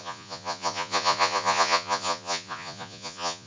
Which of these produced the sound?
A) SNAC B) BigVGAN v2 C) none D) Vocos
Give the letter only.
D